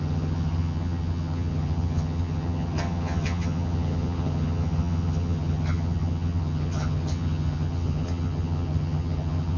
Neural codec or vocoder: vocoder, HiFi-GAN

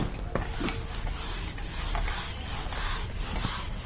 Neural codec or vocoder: none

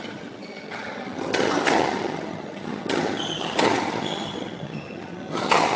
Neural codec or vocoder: vocoder, HiFi-GAN